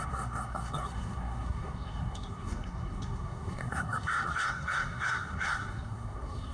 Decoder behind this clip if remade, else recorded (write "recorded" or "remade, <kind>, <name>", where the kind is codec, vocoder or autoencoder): remade, codec, SNAC